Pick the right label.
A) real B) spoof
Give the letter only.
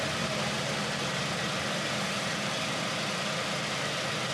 A